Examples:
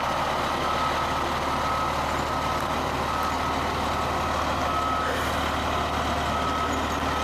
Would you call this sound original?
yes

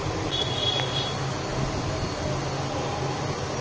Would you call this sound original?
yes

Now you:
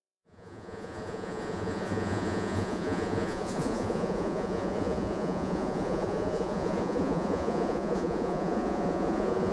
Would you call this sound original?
no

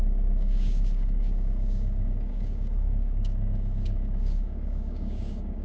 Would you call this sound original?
no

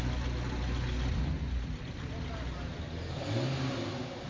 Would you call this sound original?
yes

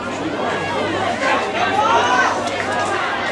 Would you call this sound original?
yes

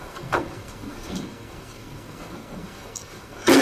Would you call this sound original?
no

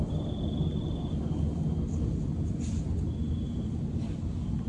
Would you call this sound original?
yes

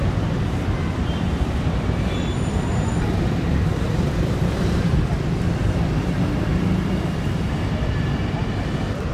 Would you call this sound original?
no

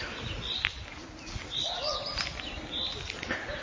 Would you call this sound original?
yes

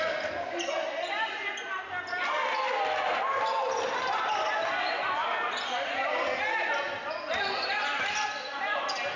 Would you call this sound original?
yes